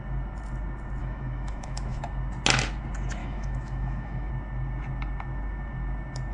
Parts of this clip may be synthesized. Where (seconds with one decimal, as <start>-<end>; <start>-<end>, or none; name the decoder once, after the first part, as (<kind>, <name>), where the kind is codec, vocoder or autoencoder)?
1.0-2.0 (autoencoder, DAC-VAE); 3.2-4.3